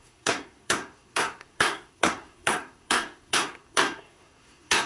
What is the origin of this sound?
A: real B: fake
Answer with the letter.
B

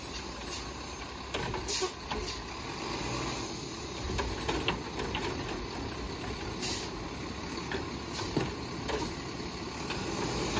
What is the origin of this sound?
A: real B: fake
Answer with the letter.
A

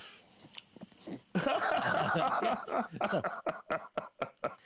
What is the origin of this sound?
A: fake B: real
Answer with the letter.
B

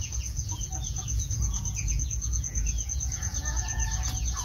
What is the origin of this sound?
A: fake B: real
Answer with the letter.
A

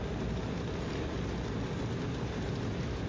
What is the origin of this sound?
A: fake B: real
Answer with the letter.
B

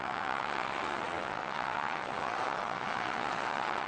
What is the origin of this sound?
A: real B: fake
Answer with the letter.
B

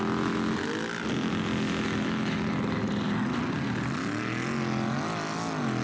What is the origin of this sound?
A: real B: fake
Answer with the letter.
A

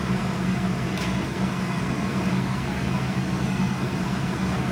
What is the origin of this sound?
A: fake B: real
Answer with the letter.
A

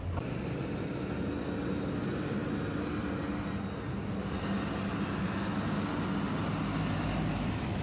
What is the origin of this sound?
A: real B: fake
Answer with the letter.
A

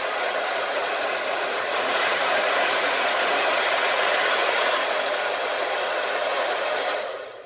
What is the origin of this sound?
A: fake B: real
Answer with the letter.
A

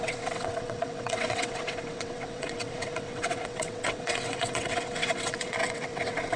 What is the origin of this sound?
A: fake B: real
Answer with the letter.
A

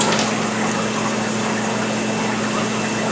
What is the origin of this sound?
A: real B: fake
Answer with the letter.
A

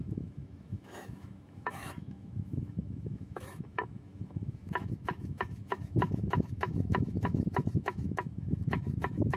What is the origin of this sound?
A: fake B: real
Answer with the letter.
A